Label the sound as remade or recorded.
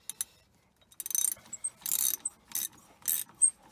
recorded